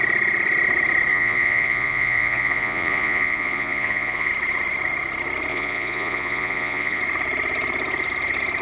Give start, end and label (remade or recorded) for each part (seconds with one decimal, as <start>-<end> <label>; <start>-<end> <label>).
0.0-1.1 recorded; 1.1-4.3 remade; 4.3-5.5 recorded; 5.5-7.0 remade; 7.0-8.6 recorded